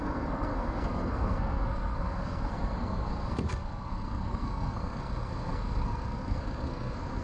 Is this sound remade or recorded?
remade